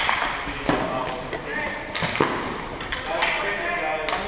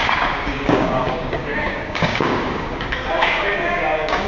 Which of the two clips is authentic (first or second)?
first